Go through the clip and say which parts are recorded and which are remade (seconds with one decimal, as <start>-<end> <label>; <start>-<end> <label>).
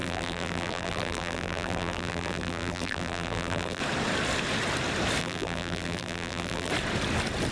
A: 0.0-3.8 remade; 3.8-5.2 recorded; 5.2-6.7 remade; 6.7-7.5 recorded